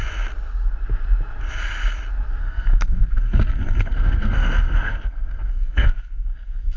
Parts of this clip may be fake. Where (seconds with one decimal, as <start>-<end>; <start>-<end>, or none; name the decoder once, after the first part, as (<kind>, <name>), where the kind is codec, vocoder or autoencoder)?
2.4-6.8 (codec, SNAC)